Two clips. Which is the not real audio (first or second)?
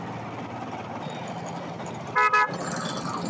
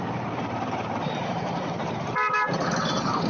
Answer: second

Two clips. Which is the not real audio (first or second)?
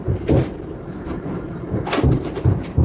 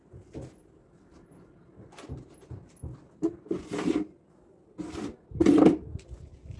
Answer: first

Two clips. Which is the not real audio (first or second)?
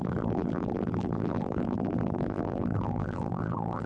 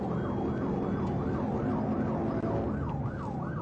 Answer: first